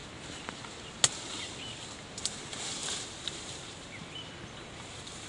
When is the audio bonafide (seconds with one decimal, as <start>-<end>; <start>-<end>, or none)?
0.0-2.8